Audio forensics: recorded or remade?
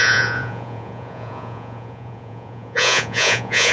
remade